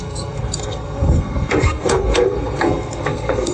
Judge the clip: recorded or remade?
remade